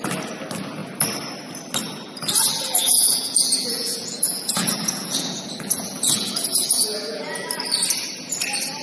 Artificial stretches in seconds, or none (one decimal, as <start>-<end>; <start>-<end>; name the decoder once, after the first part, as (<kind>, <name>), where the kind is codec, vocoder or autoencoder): 2.8-7.5 (vocoder, Vocos)